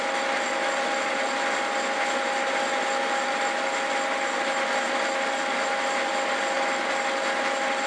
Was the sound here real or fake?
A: real